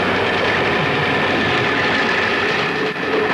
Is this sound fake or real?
real